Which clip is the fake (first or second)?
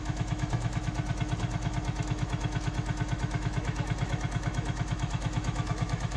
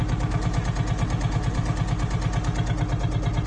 first